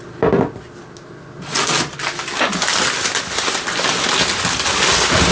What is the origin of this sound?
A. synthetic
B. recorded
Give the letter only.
B